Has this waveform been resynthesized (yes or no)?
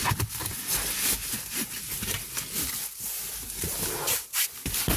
no